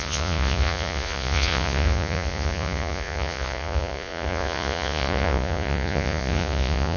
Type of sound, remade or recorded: remade